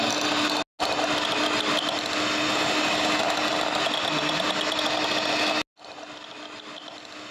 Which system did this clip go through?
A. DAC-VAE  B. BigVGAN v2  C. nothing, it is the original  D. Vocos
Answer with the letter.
C